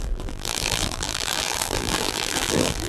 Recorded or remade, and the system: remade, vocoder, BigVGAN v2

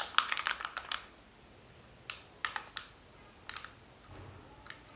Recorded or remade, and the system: recorded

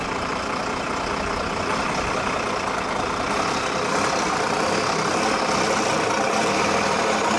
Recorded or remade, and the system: recorded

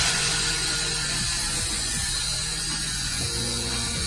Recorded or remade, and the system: remade, vocoder, Vocos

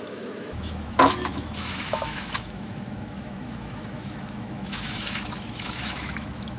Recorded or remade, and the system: remade, autoencoder, DAC-VAE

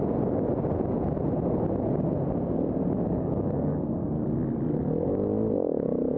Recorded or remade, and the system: recorded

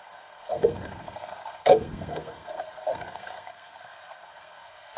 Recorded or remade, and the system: remade, codec, SNAC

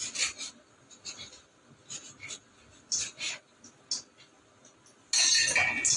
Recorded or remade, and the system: recorded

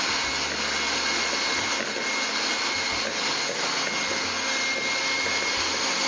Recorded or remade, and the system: recorded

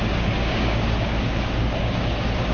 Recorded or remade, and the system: remade, codec, DAC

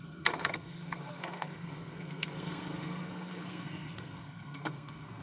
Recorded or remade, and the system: remade, codec, SNAC